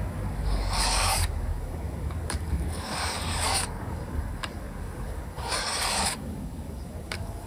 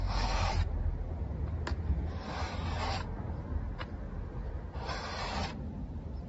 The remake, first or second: first